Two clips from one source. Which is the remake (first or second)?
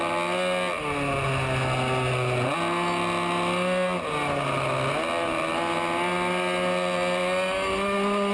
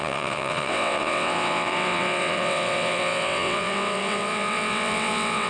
second